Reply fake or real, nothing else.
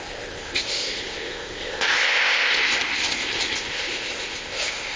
fake